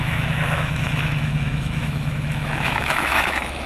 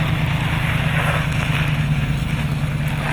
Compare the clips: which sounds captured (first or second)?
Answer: second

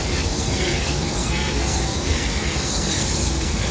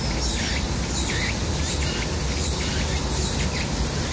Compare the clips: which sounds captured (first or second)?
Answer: second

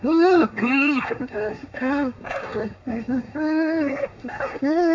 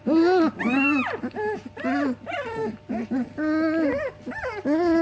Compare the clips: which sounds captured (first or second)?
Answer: second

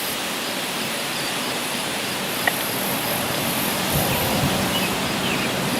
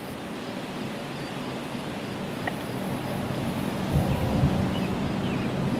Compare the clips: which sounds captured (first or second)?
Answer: second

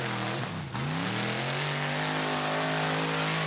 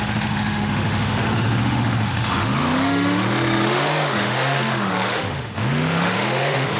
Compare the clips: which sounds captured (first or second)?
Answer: first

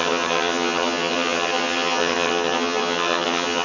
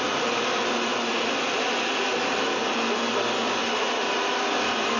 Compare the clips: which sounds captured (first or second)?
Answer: second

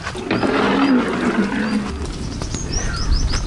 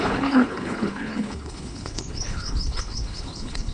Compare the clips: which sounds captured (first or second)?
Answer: first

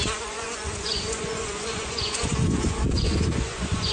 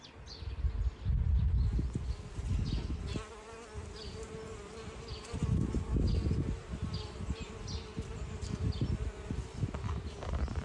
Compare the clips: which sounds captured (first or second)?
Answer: second